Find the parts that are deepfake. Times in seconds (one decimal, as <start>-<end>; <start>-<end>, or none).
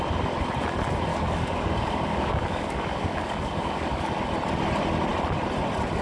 1.1-4.1